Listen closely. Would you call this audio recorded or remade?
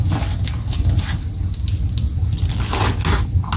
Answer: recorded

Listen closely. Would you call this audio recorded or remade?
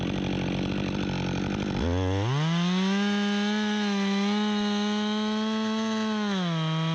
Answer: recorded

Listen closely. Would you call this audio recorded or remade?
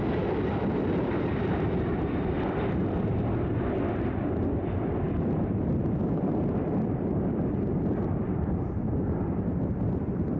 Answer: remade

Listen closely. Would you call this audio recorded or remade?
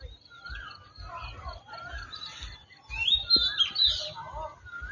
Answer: recorded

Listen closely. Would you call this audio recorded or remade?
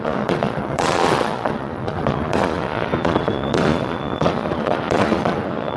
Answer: remade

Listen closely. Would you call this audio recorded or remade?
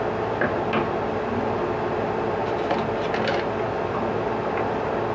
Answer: recorded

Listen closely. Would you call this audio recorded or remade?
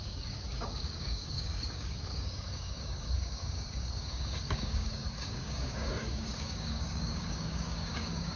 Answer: remade